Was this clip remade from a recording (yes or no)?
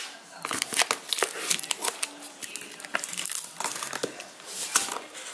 no